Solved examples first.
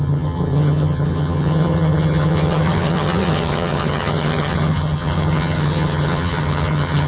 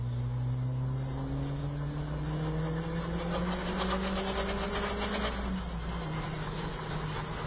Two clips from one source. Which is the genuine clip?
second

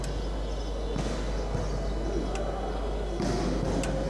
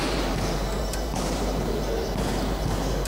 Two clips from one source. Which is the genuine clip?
first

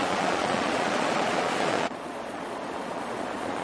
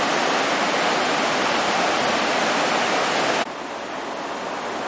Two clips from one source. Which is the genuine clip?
second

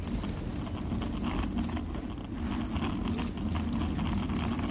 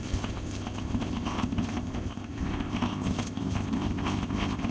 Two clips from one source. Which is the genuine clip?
first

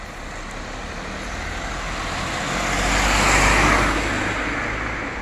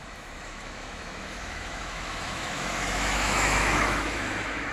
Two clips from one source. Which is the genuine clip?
first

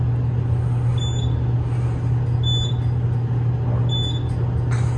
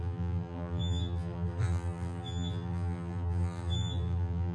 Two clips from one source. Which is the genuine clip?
first